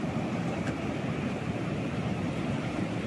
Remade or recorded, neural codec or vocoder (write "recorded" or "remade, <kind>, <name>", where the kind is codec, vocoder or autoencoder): remade, vocoder, BigVGAN v2